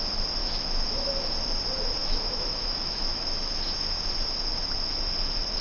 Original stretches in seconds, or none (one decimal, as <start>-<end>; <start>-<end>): 0.0-0.4; 1.2-2.0; 3.5-5.6